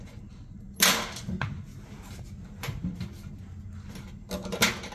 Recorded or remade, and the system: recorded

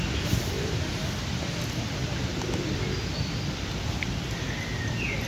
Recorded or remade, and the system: recorded